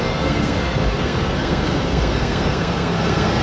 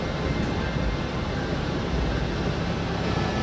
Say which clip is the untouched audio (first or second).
second